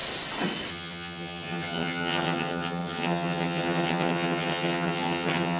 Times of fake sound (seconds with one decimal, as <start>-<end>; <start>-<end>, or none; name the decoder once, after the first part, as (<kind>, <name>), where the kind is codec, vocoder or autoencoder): 0.7-5.6 (vocoder, HiFi-GAN)